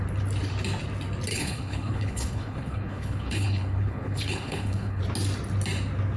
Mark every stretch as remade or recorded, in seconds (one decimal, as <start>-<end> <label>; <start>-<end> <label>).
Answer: 0.0-1.3 recorded; 1.3-5.0 remade; 5.0-6.2 recorded